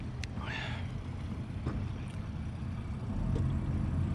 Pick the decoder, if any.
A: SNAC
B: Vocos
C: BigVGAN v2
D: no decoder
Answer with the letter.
D